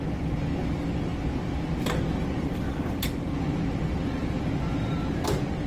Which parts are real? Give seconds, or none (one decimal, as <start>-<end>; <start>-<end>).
0.0-5.7